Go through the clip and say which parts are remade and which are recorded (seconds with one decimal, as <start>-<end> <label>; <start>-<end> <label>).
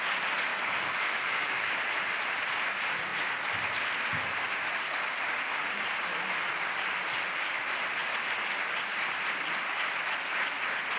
0.0-0.5 recorded; 0.5-1.7 remade; 1.7-11.0 recorded